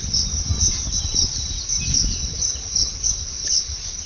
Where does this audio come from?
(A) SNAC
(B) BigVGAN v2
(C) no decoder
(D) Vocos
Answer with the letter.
C